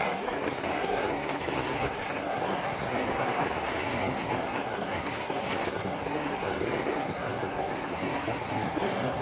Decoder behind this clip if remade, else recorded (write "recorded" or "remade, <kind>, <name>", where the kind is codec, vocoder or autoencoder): remade, codec, SNAC